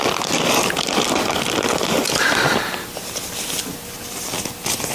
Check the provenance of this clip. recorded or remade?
recorded